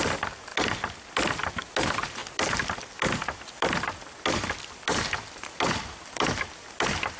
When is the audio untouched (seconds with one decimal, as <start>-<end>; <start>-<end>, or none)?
0.0-7.2